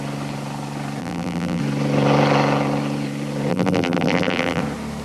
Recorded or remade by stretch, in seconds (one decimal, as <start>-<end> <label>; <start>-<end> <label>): 0.0-1.0 recorded; 1.0-1.6 remade; 1.6-3.5 recorded; 3.5-4.6 remade; 4.6-5.0 recorded